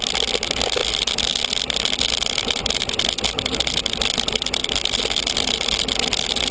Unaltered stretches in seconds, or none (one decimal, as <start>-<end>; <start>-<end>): 0.0-6.5